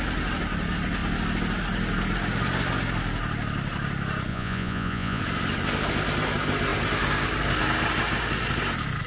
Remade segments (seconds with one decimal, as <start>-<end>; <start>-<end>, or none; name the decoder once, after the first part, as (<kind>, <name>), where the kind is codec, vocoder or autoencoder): 4.3-5.2 (vocoder, Vocos)